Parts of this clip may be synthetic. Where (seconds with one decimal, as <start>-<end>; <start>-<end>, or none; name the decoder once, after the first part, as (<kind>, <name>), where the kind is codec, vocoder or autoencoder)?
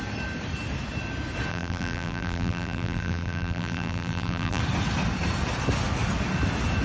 1.5-4.6 (vocoder, BigVGAN v2)